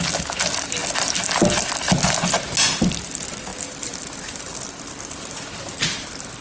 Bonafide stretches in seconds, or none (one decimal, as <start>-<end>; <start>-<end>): 0.0-6.4